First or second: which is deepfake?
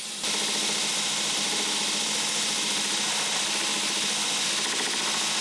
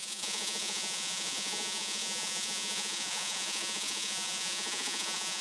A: second